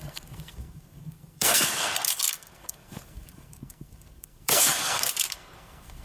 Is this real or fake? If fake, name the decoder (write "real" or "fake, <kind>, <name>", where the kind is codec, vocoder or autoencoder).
fake, codec, SNAC